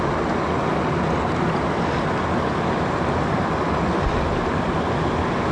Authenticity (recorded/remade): recorded